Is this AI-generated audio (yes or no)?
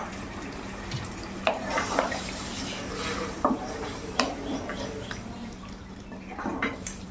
yes